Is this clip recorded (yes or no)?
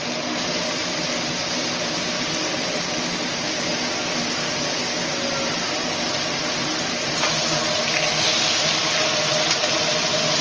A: yes